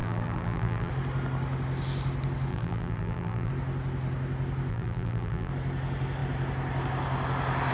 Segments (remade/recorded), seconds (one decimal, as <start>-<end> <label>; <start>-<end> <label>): 0.0-0.9 remade; 0.9-2.5 recorded; 2.5-3.5 remade; 3.5-4.7 recorded; 4.7-5.5 remade; 5.5-7.7 recorded